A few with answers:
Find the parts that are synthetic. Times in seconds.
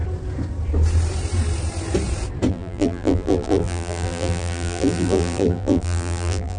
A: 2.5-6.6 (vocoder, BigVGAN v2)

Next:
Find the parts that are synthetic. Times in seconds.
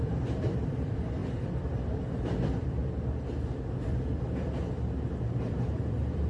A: 0.0-2.8 (vocoder, BigVGAN v2); 5.1-6.3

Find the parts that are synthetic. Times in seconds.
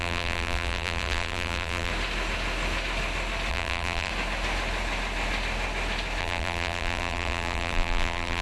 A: 0.0-1.9 (vocoder, BigVGAN v2); 3.5-4.1; 6.2-8.4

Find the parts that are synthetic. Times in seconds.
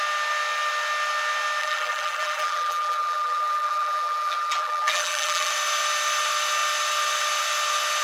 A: 1.6-5.5 (vocoder, BigVGAN v2)